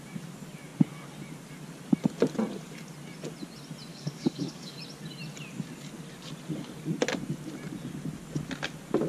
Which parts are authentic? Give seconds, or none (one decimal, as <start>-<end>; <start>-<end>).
0.0-3.9; 4.8-9.1